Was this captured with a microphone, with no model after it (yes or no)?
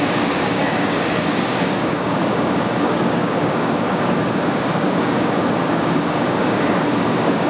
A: no